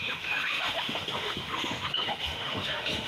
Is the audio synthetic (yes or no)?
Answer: yes